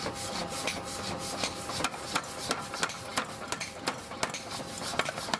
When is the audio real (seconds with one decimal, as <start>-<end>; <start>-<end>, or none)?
0.0-5.4